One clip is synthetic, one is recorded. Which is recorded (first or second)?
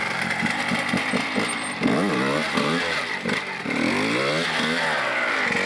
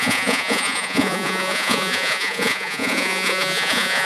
first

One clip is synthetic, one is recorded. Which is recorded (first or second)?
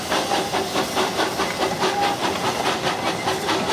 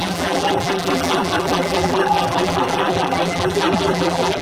first